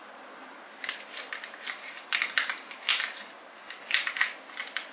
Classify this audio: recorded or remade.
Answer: remade